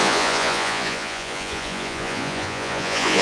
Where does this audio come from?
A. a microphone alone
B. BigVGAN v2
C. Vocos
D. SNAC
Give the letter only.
C